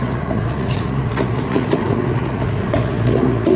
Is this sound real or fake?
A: fake